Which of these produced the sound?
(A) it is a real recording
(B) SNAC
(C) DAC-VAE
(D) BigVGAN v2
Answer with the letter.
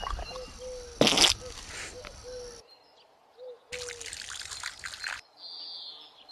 A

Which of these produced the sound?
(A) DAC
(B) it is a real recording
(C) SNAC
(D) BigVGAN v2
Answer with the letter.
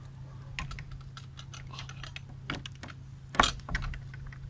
B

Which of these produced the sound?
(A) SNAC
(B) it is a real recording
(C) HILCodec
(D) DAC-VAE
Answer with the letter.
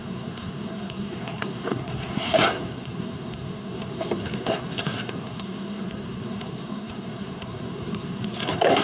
A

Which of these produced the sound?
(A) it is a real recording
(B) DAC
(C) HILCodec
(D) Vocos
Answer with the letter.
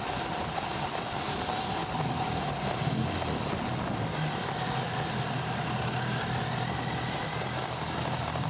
A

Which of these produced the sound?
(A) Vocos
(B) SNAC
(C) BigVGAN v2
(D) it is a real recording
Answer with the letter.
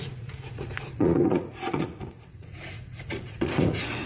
A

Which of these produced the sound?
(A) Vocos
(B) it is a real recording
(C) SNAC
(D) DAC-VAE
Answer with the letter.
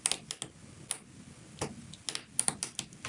B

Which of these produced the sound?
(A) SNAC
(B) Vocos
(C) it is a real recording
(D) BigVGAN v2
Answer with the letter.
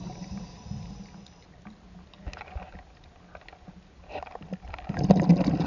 C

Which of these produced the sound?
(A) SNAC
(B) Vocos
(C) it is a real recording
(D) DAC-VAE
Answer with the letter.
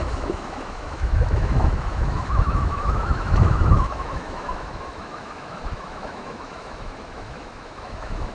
D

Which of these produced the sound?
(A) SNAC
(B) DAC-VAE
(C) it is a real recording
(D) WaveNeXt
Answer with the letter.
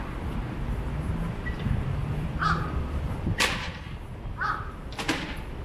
C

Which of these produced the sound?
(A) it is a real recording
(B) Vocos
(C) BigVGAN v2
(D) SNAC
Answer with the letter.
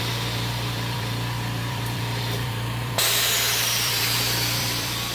C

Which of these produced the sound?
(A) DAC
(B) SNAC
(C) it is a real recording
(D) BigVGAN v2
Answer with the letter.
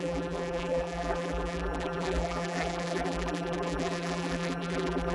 D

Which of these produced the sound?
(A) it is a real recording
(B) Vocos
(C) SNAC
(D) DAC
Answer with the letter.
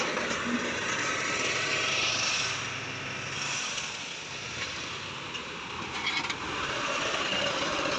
A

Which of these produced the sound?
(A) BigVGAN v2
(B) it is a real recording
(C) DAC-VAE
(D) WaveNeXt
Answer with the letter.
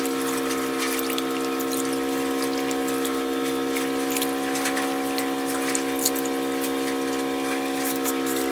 B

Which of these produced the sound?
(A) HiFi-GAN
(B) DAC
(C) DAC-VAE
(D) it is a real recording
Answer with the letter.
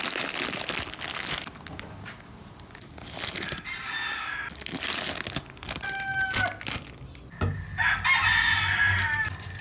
D